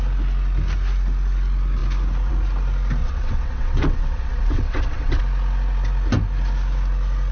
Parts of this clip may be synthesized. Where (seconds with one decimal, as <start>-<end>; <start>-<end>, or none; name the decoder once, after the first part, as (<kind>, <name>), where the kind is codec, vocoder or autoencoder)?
3.0-5.2 (vocoder, WaveNeXt)

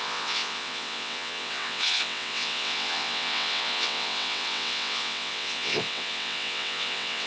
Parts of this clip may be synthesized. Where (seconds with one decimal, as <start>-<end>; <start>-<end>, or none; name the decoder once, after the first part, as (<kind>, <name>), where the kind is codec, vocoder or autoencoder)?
0.0-7.3 (vocoder, WaveNeXt)